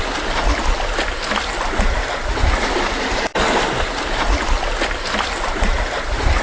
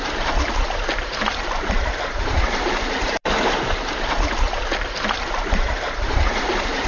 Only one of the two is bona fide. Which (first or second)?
first